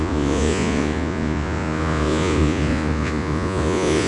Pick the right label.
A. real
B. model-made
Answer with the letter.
B